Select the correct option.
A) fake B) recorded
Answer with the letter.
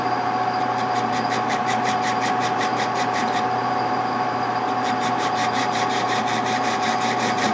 A